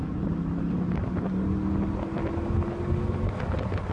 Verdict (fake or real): real